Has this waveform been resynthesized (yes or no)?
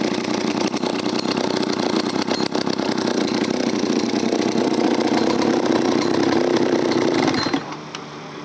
yes